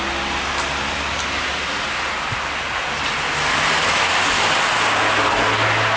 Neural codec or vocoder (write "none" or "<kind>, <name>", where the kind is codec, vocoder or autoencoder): none